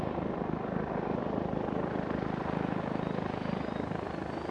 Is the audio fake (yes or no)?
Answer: no